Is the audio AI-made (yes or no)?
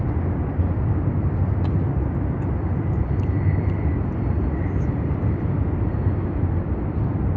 no